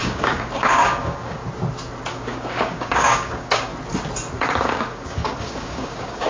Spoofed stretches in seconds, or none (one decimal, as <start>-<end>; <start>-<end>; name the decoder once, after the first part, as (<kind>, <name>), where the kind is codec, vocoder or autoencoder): 0.0-1.4 (codec, DAC); 2.1-3.7; 4.3-6.3